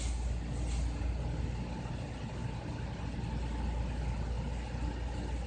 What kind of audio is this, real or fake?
real